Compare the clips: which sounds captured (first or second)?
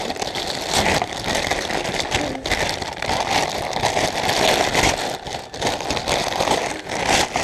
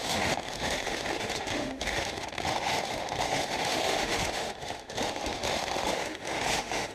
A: first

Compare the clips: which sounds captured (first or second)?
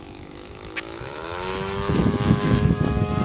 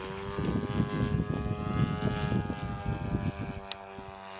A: second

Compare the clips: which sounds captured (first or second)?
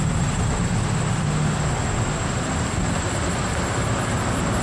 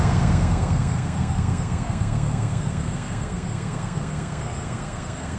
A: first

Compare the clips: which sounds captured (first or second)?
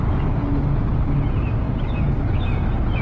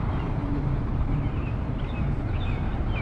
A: first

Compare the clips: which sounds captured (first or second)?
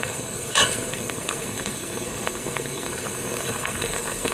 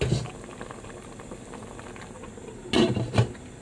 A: second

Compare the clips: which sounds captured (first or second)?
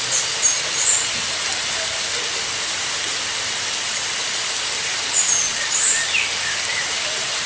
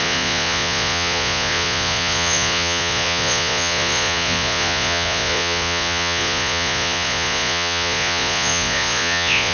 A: first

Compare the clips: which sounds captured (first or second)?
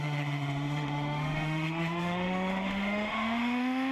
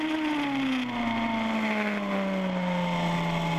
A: second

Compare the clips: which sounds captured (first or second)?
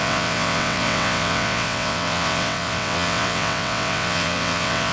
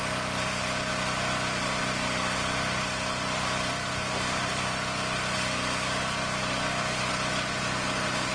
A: second